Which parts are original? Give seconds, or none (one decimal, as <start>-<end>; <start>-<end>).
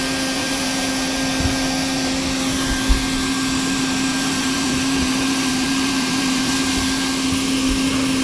0.0-0.4; 0.9-4.1; 6.5-8.2